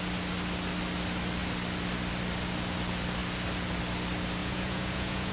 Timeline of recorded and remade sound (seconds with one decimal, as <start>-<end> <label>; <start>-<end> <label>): 0.0-4.4 recorded; 4.4-5.3 remade